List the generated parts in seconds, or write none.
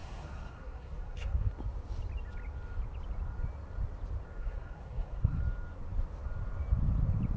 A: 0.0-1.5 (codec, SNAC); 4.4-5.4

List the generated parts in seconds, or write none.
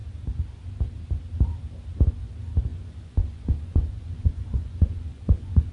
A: 2.7-5.7 (vocoder, Vocos)